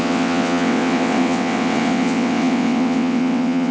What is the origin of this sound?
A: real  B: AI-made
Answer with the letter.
B